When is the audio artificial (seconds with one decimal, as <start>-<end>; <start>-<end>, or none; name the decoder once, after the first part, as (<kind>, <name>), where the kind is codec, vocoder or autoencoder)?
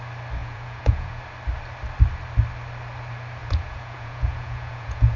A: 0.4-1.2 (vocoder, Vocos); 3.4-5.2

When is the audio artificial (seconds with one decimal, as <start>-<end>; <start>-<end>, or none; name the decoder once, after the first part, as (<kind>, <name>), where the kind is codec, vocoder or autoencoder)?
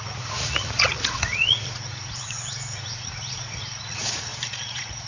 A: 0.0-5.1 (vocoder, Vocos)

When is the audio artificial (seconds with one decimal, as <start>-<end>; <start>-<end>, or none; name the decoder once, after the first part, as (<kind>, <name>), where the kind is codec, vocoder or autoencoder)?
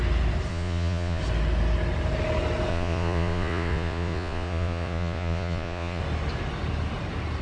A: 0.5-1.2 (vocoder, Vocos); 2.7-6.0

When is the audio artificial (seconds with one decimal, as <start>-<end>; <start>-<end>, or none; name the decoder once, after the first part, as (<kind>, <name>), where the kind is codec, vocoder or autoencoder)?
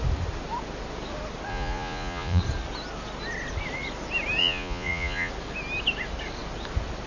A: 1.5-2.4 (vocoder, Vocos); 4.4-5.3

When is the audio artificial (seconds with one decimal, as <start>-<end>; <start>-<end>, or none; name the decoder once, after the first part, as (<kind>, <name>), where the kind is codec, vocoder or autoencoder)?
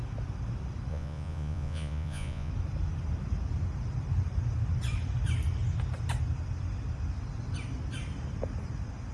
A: 0.9-2.5 (vocoder, Vocos)